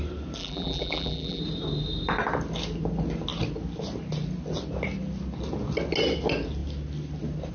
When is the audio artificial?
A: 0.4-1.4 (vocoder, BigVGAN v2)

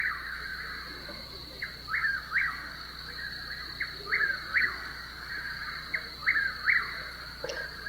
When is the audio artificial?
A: 2.0-3.0 (codec, DAC); 4.5-5.3